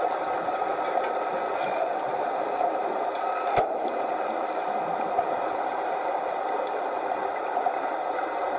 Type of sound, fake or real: fake